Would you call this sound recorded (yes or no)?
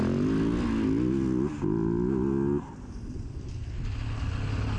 yes